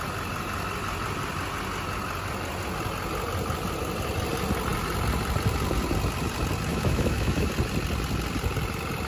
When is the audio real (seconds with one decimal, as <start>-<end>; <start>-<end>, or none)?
0.0-6.7; 7.5-9.1